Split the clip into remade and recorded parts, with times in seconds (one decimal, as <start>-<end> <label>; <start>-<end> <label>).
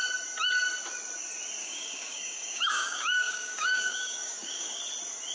0.0-1.6 recorded; 1.6-4.8 remade; 4.8-5.3 recorded